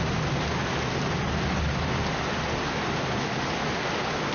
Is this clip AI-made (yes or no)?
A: no